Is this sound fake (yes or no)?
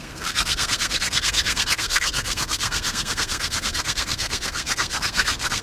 yes